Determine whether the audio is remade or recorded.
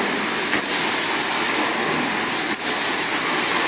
recorded